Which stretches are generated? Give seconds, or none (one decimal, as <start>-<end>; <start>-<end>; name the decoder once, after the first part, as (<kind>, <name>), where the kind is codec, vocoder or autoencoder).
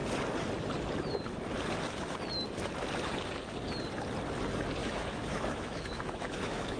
4.8-6.8 (autoencoder, DAC-VAE)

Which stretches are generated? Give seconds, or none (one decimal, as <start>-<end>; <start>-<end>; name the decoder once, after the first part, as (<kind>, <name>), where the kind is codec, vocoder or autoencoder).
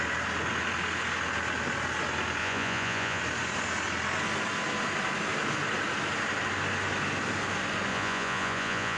2.4-3.2 (vocoder, Vocos); 7.9-9.0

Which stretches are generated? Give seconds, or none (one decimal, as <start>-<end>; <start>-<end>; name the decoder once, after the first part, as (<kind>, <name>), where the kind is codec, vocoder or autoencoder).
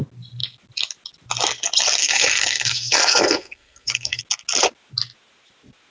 2.0-4.2 (codec, SNAC)